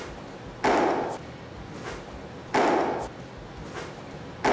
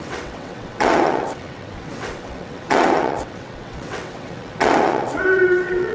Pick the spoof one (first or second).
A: second